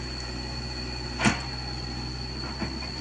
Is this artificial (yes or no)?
no